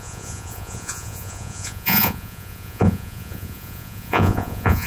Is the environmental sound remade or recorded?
remade